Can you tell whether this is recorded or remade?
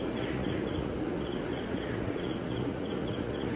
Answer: remade